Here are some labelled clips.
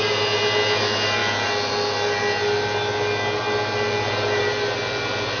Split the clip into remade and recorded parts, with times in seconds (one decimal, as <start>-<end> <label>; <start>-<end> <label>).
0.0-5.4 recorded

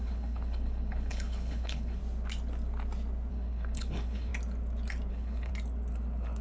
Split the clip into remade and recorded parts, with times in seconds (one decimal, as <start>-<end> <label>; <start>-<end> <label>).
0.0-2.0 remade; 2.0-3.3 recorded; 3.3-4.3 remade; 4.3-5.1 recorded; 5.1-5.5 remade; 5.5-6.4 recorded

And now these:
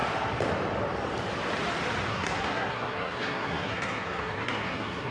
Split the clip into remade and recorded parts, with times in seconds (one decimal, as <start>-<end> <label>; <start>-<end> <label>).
0.0-2.1 recorded; 2.1-5.1 remade

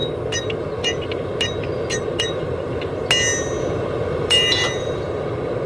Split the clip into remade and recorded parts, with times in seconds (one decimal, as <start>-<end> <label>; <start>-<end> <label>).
0.0-4.1 recorded; 4.1-5.0 remade; 5.0-5.7 recorded